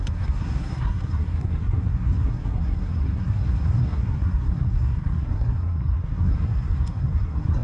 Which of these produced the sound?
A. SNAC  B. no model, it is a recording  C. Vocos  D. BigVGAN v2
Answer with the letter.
A